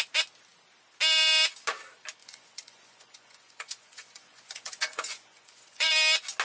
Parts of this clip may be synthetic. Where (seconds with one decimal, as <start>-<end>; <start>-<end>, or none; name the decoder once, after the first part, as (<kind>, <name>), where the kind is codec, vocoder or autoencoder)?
2.2-5.9 (vocoder, Vocos)